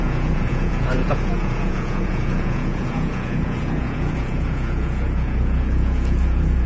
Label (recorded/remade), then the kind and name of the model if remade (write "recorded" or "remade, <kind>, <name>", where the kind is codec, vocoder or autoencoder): remade, vocoder, Vocos